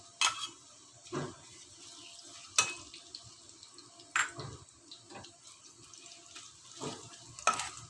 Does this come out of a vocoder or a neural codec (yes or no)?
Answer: no